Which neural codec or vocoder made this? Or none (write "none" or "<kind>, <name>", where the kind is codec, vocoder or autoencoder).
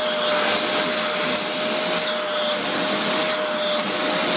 none